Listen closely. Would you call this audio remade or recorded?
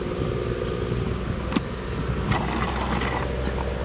recorded